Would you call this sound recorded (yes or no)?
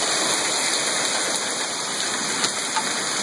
yes